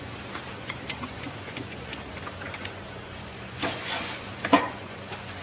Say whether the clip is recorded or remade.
remade